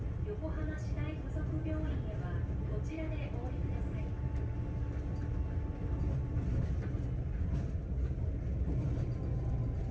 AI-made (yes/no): no